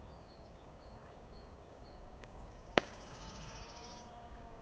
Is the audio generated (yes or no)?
yes